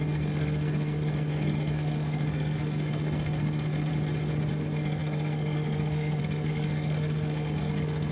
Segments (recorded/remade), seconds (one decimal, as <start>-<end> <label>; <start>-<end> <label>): 0.0-3.9 remade; 3.9-4.5 recorded; 4.5-8.1 remade